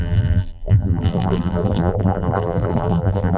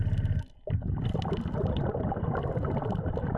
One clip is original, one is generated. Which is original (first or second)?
second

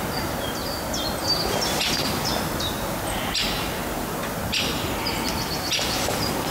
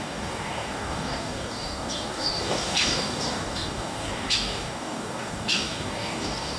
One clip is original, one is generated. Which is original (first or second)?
first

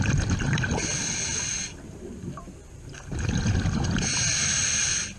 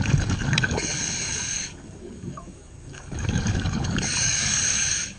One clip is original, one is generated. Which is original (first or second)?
first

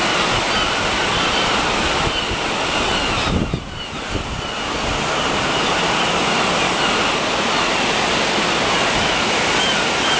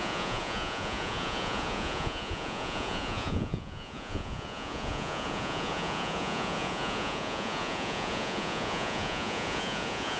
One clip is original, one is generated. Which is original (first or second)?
first